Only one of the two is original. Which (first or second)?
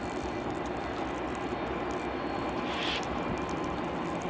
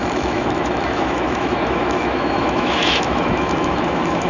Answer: first